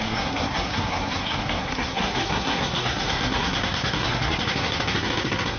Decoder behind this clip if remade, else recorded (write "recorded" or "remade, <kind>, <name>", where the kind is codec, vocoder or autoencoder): remade, codec, SNAC